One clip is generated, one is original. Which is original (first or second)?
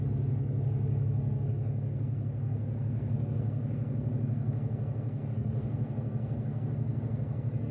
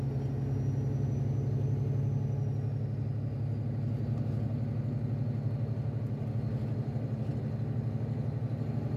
second